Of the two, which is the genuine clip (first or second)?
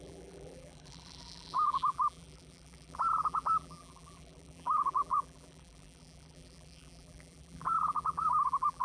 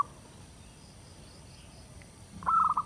second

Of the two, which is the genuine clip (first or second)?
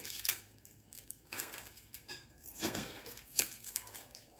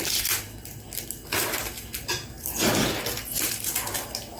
second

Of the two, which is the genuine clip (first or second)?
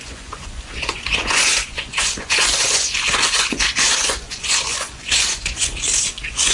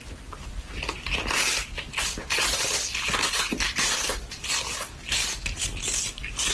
second